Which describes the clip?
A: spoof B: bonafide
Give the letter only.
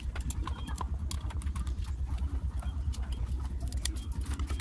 B